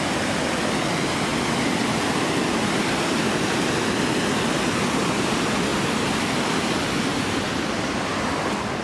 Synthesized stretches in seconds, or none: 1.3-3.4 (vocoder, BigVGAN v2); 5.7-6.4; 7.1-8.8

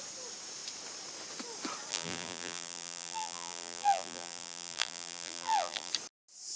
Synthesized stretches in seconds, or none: 1.9-5.9 (vocoder, BigVGAN v2)